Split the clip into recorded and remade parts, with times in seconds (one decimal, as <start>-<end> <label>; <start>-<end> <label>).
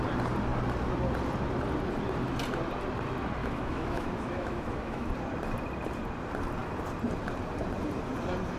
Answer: 0.0-3.4 recorded; 3.4-5.1 remade; 5.1-8.6 recorded